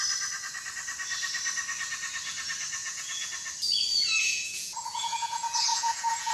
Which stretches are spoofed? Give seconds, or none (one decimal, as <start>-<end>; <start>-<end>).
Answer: 2.8-3.3; 4.1-6.3